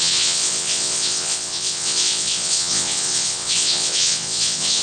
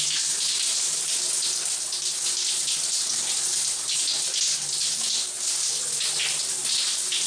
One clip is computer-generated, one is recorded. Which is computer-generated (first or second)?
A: first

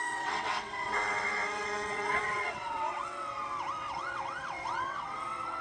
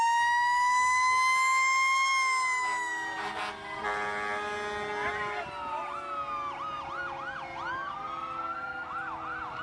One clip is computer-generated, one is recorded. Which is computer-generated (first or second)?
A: first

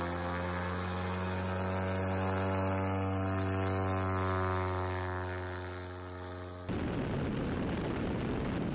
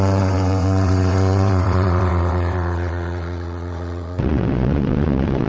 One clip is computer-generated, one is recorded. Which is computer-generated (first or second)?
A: second